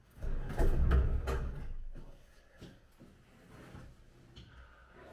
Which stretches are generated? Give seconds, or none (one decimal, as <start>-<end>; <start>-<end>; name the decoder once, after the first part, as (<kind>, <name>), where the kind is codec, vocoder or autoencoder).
0.0-2.9 (codec, DAC)